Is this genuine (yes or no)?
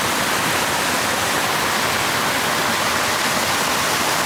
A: yes